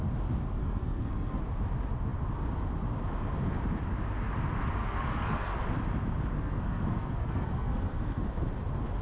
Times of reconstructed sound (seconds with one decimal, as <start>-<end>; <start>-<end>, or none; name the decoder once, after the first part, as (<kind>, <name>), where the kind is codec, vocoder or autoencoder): 0.6-1.4 (codec, SNAC); 4.8-5.6; 6.3-8.2